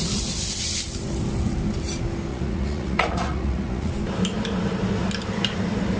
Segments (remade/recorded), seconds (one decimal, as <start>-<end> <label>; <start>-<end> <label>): 0.0-2.3 recorded; 2.3-3.9 remade; 3.9-6.0 recorded